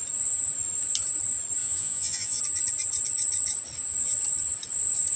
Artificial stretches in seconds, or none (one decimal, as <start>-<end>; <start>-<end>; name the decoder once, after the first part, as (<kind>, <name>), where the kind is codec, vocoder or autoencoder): 1.6-2.4 (vocoder, Vocos)